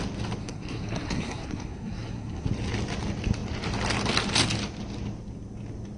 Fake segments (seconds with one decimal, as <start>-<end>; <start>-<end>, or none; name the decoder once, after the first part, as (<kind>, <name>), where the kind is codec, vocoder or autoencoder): 0.4-2.5 (codec, SNAC)